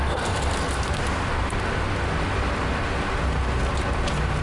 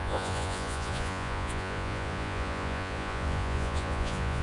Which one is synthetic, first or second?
second